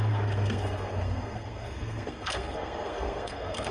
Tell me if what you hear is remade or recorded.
remade